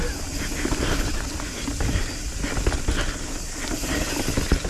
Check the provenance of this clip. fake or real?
real